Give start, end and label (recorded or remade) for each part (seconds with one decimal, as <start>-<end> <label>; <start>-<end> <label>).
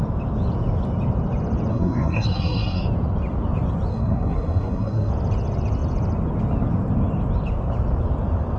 0.0-1.7 recorded; 1.7-2.8 remade; 2.8-3.9 recorded; 3.9-5.1 remade; 5.1-8.6 recorded